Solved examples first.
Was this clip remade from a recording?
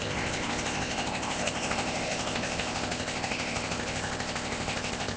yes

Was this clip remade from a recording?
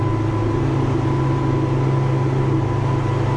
no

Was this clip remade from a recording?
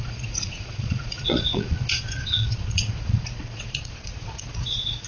yes